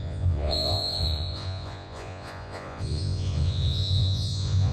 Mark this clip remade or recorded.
remade